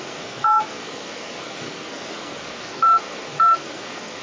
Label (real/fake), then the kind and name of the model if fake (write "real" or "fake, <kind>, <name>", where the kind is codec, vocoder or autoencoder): fake, codec, SNAC